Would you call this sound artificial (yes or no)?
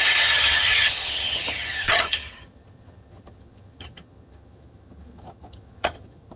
yes